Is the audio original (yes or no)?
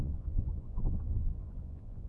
no